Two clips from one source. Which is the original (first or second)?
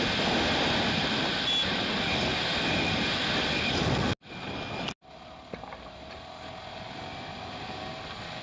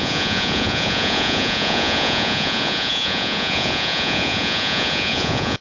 first